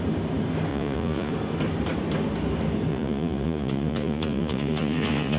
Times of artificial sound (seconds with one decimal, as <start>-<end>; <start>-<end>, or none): 0.7-1.3; 2.9-5.4